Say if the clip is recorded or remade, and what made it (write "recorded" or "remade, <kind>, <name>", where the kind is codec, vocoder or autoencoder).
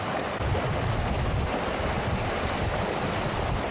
recorded